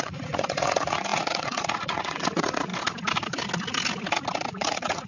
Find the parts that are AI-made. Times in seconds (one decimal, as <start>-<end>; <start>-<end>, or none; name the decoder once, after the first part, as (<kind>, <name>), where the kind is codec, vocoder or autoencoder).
0.0-2.7 (vocoder, Vocos); 4.5-5.1